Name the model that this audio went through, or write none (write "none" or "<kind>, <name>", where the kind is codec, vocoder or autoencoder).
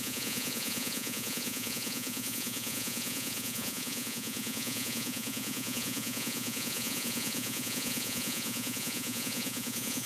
vocoder, Vocos